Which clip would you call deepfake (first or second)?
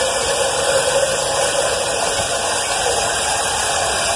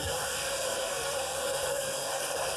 second